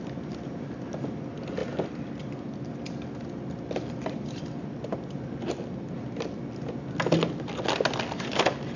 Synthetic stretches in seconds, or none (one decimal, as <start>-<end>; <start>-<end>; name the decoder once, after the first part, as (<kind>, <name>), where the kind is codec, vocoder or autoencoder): none